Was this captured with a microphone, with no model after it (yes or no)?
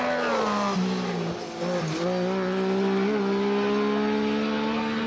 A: yes